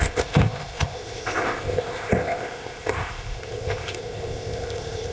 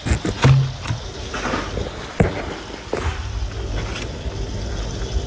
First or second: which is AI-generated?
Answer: first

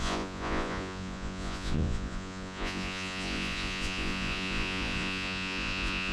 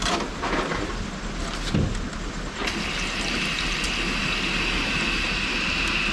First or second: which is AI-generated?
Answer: first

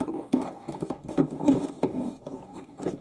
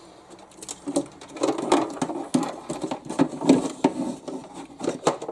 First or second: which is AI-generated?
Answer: first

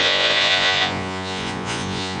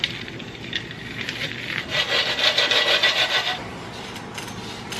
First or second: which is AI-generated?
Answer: first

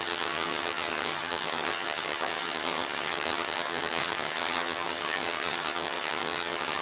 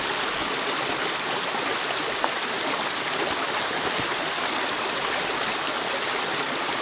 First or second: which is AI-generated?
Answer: first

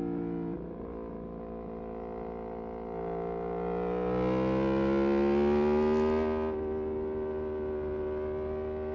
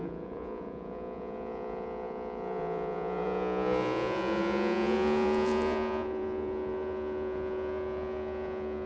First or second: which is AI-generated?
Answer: second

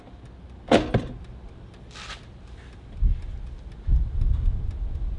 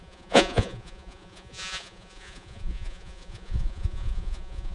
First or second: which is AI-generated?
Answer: second